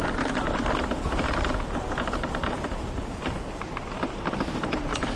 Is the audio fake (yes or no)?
no